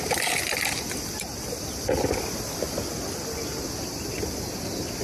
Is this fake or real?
real